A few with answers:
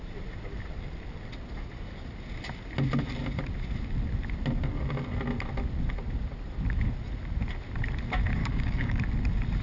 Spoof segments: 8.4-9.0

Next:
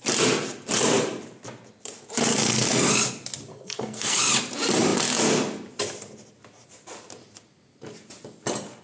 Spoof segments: 2.3-2.9; 3.5-4.2

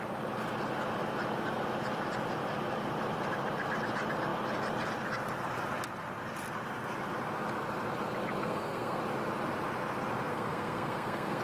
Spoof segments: 8.4-9.0; 10.3-11.4

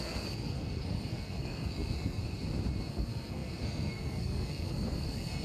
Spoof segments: 0.0-2.2; 2.9-5.4

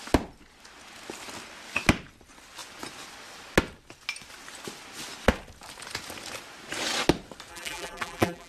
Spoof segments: 7.5-8.5